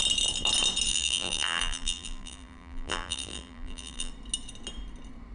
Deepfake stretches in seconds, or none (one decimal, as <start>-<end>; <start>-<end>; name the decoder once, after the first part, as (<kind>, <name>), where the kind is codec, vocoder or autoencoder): 0.9-4.1 (vocoder, BigVGAN v2)